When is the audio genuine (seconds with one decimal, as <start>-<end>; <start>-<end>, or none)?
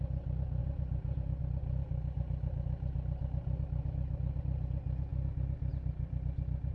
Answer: 0.0-0.6; 1.4-6.7